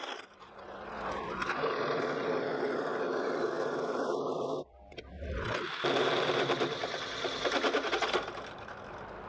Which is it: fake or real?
fake